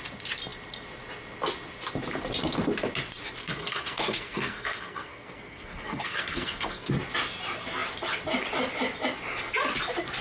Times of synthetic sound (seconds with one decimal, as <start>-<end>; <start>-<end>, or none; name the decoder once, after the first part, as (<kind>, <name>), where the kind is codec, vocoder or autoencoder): 3.4-6.9 (codec, SNAC)